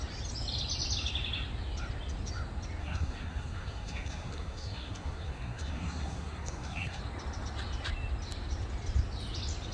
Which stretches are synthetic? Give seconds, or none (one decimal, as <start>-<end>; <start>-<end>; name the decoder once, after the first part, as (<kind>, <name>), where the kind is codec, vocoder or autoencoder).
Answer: 2.8-7.0 (codec, SNAC)